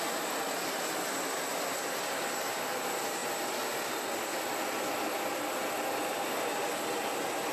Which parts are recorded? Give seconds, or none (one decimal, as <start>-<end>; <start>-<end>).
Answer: 0.0-7.5